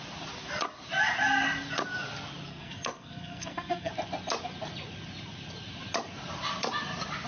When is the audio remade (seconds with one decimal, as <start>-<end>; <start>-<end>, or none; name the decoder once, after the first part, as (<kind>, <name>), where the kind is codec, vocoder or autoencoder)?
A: 2.5-3.9 (codec, SNAC)